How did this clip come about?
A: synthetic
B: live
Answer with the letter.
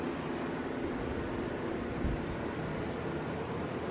B